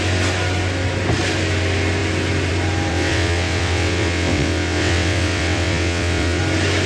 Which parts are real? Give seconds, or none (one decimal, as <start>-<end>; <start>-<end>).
0.0-2.9; 6.4-6.9